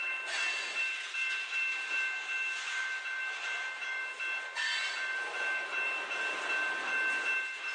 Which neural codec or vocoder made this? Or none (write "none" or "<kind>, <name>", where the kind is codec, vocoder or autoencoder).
none